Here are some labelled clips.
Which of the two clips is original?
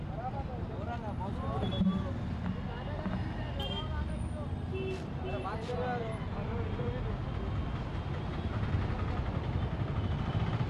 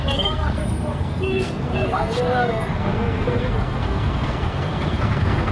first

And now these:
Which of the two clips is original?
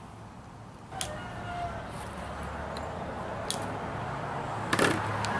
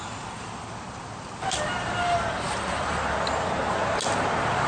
first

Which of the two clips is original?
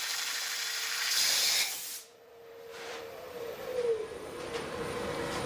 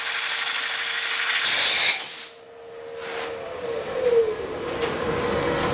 second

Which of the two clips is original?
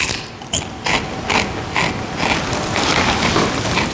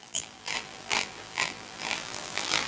first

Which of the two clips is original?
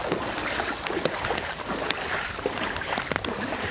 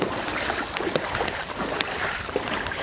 first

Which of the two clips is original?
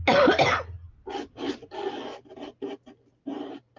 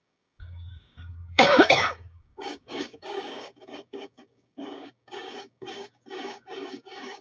first